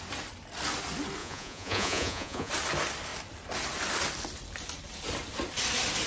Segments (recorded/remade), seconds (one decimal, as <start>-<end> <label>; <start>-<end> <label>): 0.0-1.2 recorded; 1.2-2.5 remade; 2.5-6.1 recorded